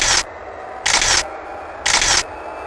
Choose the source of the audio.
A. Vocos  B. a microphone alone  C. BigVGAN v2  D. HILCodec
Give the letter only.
B